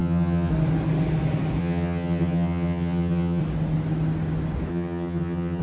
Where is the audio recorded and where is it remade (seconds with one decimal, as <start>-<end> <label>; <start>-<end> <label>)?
0.0-0.5 remade; 0.5-1.6 recorded; 1.6-3.4 remade; 3.4-4.7 recorded; 4.7-5.6 remade